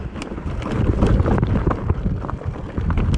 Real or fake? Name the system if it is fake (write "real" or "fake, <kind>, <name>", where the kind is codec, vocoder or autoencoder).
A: real